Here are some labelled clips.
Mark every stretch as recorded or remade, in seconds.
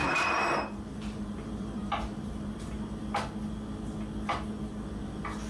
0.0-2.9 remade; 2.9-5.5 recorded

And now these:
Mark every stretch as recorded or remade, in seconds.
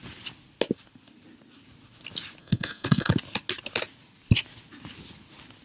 0.0-2.4 recorded; 2.4-3.1 remade; 3.1-5.6 recorded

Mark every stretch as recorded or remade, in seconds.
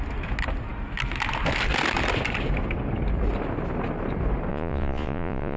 0.0-4.5 recorded; 4.5-5.6 remade